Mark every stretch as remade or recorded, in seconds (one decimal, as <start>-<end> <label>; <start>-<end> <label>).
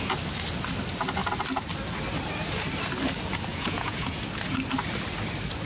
0.0-3.5 recorded; 3.5-4.2 remade; 4.2-5.7 recorded